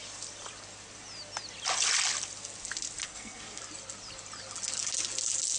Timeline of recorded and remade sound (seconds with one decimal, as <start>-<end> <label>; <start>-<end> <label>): 0.0-3.0 recorded; 3.0-3.6 remade; 3.6-5.6 recorded